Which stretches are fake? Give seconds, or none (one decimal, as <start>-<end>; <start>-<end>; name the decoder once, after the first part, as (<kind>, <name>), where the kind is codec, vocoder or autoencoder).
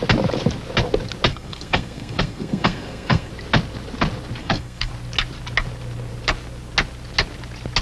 1.3-3.3 (codec, SNAC); 4.4-4.9